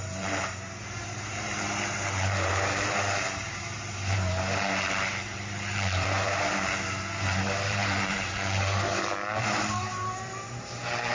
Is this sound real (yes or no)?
no